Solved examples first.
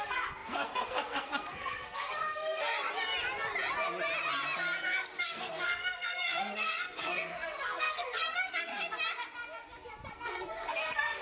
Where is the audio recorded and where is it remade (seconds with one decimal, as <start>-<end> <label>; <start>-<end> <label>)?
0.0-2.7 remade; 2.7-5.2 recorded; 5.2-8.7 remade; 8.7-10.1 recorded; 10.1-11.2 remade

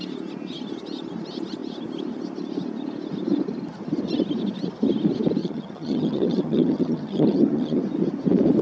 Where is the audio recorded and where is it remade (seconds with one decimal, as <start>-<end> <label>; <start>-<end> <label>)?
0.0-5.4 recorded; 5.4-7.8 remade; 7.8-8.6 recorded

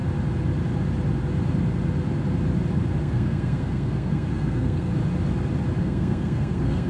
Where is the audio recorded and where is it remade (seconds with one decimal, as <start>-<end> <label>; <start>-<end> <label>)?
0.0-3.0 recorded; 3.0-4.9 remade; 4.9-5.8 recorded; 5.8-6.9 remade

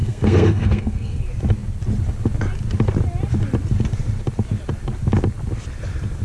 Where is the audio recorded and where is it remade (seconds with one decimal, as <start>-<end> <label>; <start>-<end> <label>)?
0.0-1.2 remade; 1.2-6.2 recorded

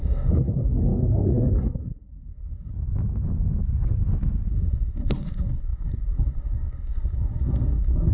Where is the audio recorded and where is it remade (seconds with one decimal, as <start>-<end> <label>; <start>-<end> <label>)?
0.0-2.7 remade; 2.7-4.5 recorded; 4.5-8.1 remade

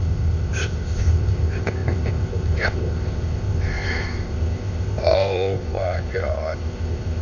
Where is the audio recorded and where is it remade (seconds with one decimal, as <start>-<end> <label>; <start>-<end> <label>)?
0.0-7.2 remade

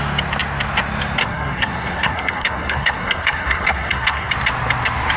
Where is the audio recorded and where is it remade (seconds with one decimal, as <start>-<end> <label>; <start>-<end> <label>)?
0.0-1.2 recorded; 1.2-4.3 remade; 4.3-5.2 recorded

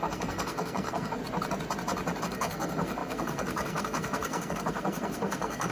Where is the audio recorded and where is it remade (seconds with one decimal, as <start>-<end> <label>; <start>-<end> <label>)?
0.0-1.2 remade; 1.2-2.2 recorded; 2.2-5.7 remade